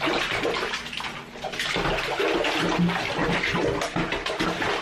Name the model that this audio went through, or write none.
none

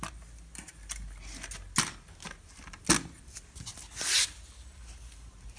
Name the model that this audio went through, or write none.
none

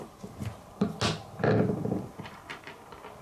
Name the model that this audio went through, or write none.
none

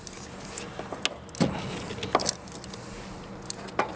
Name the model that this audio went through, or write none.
none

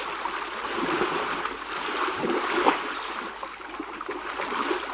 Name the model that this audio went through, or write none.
none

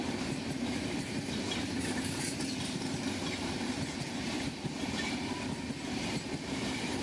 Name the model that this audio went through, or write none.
vocoder, BigVGAN v2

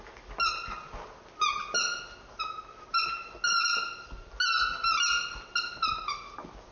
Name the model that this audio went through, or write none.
none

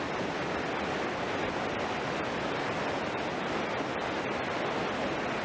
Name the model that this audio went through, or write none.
none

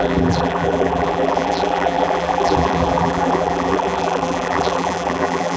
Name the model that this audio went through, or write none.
vocoder, BigVGAN v2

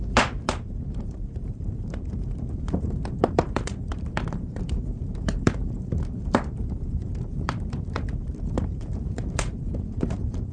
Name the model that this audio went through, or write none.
vocoder, BigVGAN v2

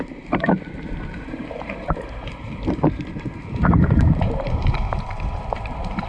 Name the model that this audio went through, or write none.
vocoder, BigVGAN v2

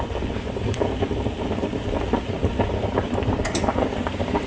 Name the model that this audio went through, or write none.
vocoder, BigVGAN v2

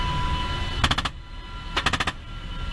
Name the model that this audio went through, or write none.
none